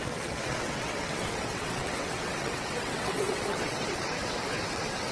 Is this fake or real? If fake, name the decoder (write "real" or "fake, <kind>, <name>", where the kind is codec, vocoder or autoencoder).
fake, vocoder, WaveNeXt